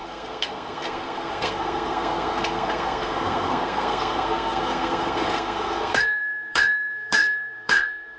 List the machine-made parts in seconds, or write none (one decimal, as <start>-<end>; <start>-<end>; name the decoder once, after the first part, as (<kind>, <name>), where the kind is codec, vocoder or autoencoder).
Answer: 0.0-8.2 (codec, SNAC)